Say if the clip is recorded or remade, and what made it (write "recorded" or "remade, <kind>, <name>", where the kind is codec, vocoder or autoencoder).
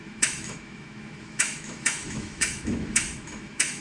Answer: remade, autoencoder, DAC-VAE